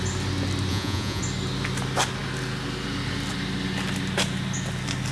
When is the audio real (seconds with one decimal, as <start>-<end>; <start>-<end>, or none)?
0.0-0.7; 1.2-5.1